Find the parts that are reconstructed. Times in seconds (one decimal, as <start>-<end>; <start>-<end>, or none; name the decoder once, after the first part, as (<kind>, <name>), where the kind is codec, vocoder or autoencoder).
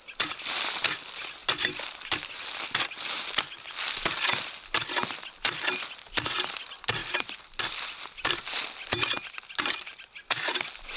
none